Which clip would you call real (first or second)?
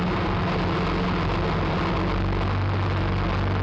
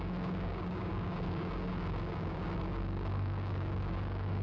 first